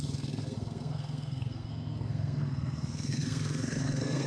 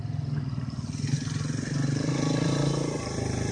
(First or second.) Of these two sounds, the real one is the second